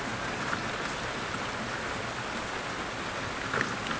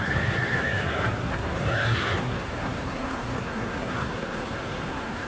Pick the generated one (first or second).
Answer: second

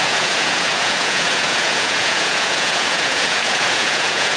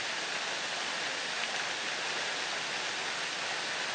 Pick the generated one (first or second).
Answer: first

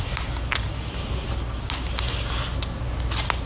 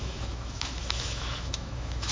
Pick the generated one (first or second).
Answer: second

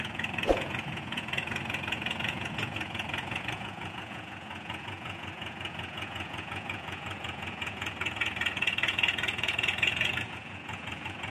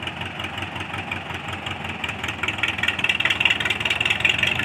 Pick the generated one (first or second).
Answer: first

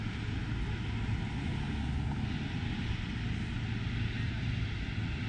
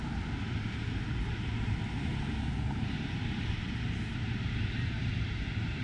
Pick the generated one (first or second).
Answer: second